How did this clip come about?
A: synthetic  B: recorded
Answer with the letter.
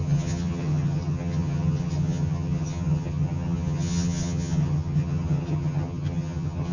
A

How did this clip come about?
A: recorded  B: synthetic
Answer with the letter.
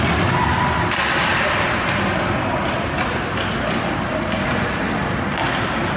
A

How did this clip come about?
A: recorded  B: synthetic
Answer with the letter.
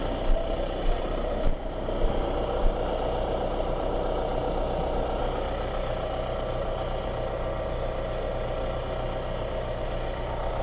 A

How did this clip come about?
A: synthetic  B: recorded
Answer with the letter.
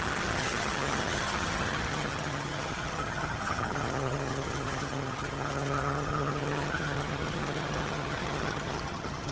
A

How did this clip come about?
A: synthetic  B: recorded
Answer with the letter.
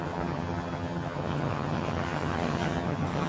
A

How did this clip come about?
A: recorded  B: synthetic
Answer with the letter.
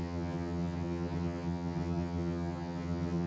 B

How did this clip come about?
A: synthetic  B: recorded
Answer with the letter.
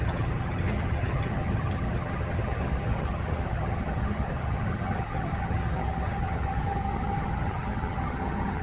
A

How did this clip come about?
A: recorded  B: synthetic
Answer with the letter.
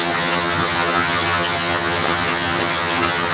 B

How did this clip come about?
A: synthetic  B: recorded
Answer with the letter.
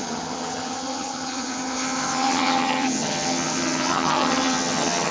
A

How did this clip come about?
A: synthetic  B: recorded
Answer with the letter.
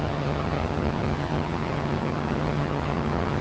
A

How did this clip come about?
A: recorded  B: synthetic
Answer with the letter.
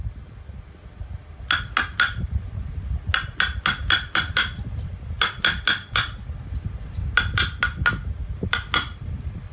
A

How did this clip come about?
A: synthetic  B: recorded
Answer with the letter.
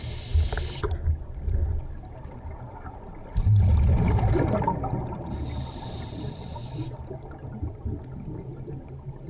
B